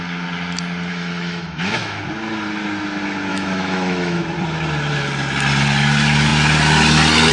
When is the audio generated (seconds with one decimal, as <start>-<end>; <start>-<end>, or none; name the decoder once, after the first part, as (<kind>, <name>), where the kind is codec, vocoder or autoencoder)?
0.9-2.0 (autoencoder, DAC-VAE); 3.3-4.2